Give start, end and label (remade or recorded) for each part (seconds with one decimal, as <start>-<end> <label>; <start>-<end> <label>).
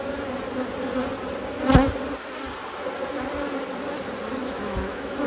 0.0-4.4 recorded; 4.4-5.3 remade